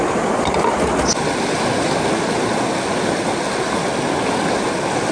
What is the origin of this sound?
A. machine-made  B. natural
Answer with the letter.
B